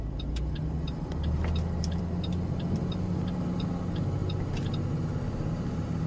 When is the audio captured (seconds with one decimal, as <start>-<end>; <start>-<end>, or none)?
0.0-6.1